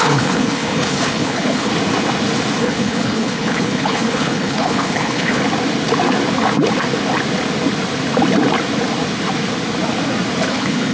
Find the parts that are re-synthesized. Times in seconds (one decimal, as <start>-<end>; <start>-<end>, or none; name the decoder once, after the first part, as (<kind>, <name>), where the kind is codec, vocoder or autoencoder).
0.0-1.7 (codec, HILCodec); 2.6-5.4; 10.5-10.9